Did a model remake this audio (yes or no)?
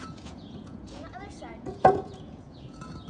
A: yes